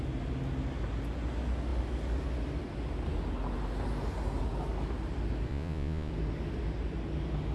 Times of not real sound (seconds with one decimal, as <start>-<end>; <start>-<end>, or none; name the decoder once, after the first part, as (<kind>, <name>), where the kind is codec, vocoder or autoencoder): 5.5-6.1 (vocoder, Vocos)